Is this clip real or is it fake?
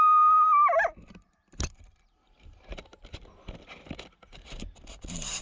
real